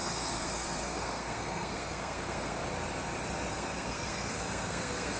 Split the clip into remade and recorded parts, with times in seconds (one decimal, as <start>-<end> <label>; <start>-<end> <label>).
0.0-2.6 remade; 2.6-3.5 recorded; 3.5-5.2 remade